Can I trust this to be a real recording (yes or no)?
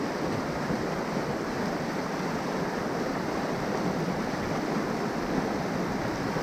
yes